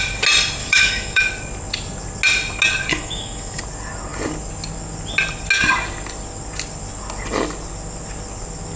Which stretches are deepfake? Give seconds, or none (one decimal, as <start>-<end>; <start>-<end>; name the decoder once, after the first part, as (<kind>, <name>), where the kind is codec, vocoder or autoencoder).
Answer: 0.6-1.2 (autoencoder, DAC-VAE); 2.9-3.6